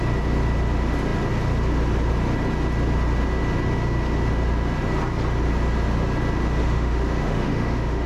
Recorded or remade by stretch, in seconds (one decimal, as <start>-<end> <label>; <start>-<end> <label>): 0.0-6.6 recorded; 6.6-8.1 remade